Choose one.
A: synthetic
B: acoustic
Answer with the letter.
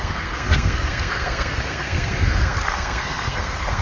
A